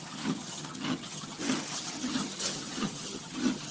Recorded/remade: remade